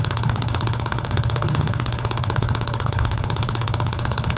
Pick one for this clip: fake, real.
fake